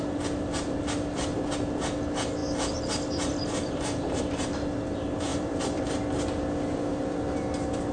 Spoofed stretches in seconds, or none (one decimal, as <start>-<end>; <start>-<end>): 5.3-5.8